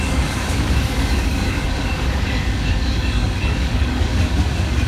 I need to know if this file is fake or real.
fake